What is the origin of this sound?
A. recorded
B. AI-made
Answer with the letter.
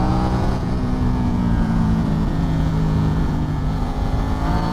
B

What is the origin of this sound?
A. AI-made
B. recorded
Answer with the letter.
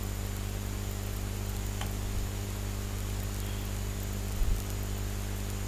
B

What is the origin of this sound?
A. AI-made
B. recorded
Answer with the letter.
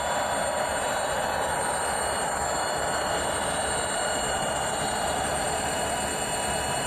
B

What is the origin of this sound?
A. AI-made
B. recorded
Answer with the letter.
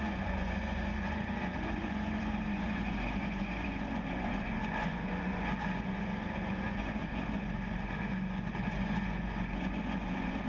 A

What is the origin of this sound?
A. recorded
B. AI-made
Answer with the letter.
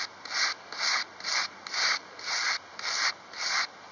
A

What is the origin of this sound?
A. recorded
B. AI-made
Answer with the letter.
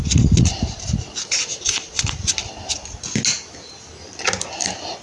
A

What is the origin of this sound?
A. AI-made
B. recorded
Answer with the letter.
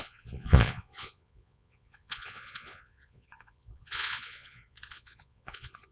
A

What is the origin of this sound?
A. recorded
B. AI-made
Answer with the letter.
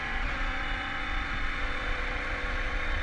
B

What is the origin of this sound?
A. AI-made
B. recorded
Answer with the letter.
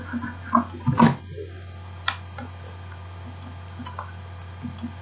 B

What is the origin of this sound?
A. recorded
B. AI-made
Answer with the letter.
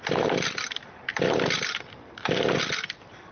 A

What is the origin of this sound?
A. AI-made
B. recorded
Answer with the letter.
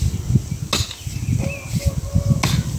B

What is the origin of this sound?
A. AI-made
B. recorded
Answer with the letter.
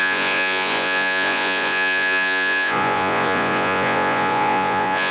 A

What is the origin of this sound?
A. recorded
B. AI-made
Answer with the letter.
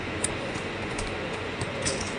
B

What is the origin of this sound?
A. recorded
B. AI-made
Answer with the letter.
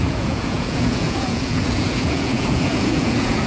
B